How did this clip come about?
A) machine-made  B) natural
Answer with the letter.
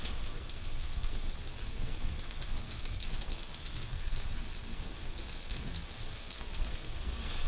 A